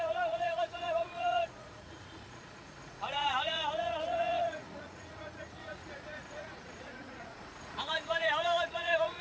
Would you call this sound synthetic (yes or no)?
yes